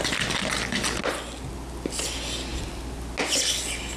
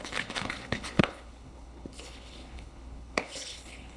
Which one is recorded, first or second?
first